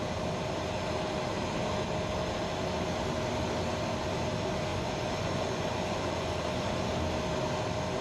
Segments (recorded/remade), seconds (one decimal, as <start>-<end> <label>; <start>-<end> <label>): 0.0-4.7 recorded; 4.7-6.7 remade; 6.7-8.0 recorded